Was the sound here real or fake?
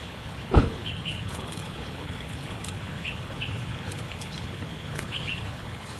fake